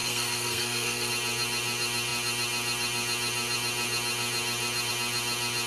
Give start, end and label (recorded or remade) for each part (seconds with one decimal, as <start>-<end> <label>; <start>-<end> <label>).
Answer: 0.0-1.1 remade; 1.1-5.7 recorded